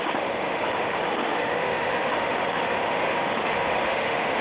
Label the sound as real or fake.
fake